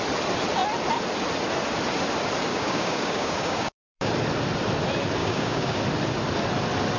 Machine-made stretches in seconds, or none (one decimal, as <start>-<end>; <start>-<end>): 2.5-4.1; 5.2-5.8

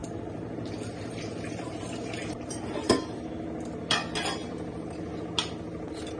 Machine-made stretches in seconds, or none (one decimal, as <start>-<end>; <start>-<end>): 0.0-3.3; 4.4-5.2